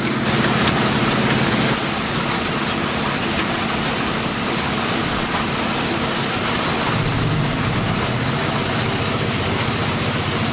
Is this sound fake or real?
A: real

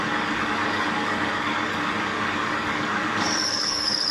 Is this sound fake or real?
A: fake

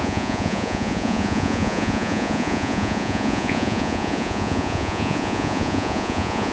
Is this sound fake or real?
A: fake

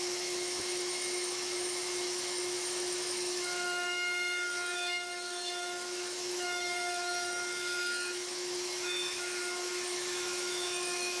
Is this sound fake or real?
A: fake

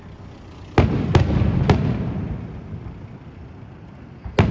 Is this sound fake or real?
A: real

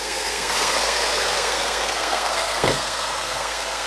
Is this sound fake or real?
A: fake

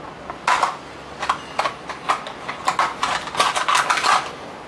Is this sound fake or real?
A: real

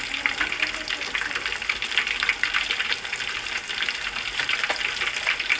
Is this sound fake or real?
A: real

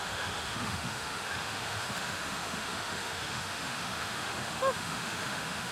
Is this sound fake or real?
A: fake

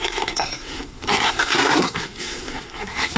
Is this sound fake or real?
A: fake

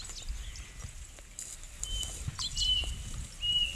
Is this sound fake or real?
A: real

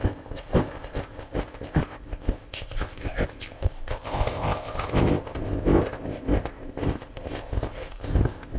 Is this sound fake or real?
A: fake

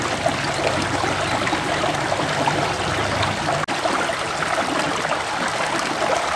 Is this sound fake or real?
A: real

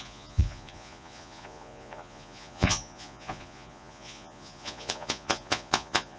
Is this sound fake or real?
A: fake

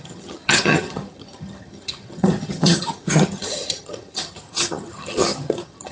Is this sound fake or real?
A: fake